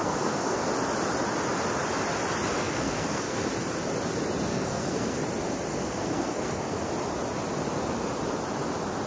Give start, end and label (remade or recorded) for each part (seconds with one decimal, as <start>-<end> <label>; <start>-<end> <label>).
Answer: 0.0-0.7 remade; 0.7-2.6 recorded; 2.6-3.5 remade; 3.5-4.5 recorded; 4.5-5.2 remade; 5.2-5.7 recorded; 5.7-6.9 remade; 6.9-9.1 recorded